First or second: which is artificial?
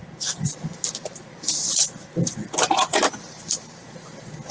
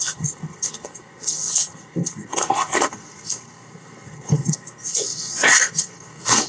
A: second